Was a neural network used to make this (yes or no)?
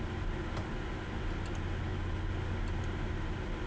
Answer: no